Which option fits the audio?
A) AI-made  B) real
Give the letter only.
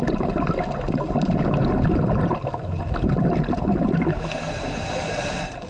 B